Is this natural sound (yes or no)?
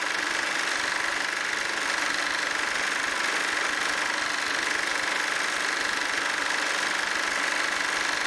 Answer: yes